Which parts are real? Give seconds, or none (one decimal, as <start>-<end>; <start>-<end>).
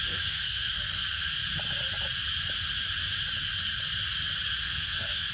1.4-4.6